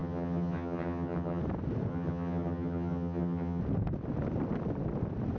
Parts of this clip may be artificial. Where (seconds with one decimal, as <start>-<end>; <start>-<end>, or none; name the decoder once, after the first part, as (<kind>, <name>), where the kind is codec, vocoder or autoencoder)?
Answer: 0.0-1.4 (vocoder, HiFi-GAN); 1.9-3.6